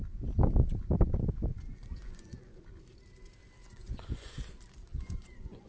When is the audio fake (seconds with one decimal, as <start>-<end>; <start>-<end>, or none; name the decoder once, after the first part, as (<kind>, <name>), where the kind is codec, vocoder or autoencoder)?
1.7-2.6 (vocoder, Vocos); 3.6-4.3; 4.9-5.7